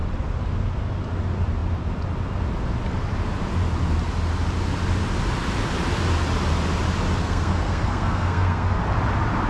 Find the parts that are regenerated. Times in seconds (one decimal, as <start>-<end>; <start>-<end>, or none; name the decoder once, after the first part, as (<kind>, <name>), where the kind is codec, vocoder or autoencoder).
7.2-8.8 (codec, SNAC)